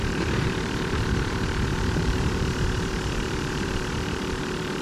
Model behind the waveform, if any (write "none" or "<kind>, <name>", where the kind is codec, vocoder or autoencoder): vocoder, BigVGAN v2